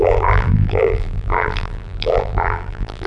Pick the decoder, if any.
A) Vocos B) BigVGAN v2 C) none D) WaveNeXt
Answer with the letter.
B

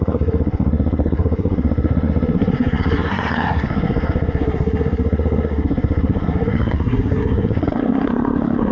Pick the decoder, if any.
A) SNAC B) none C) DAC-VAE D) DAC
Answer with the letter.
A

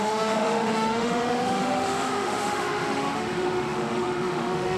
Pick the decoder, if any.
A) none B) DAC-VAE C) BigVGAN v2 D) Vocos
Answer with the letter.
B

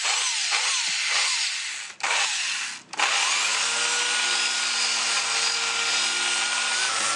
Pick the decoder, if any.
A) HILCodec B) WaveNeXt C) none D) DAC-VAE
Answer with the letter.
C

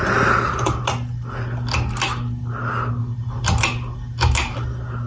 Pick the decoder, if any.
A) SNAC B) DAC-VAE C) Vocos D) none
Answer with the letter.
D